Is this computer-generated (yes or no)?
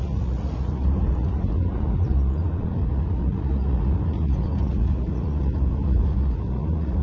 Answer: yes